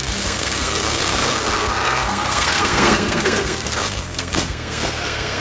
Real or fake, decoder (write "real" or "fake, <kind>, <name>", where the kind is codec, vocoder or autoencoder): fake, codec, SNAC